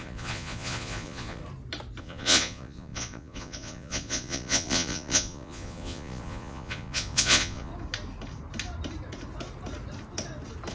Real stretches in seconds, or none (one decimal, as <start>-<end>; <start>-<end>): 1.4-2.0; 7.7-10.7